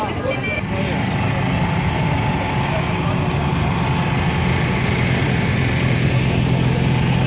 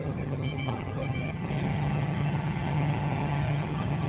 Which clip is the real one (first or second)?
first